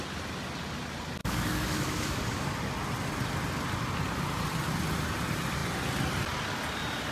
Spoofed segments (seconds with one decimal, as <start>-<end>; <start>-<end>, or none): 1.2-2.5